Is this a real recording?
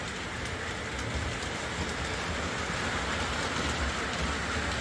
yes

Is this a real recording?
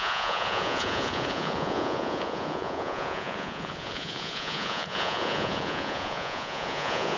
no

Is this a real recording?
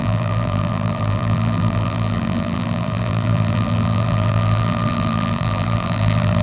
no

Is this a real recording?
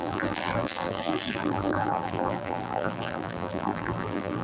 no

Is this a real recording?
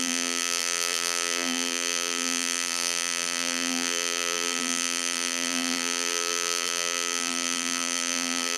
no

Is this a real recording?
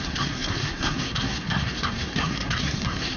no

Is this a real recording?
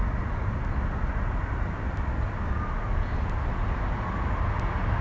yes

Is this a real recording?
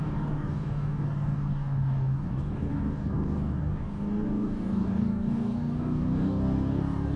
no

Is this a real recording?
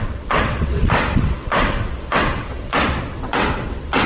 no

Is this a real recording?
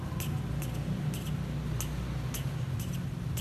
yes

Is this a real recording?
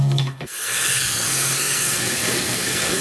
no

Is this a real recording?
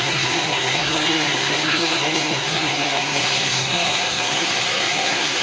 no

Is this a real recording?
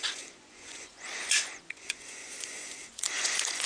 no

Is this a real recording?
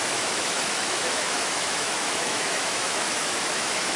no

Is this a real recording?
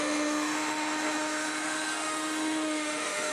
no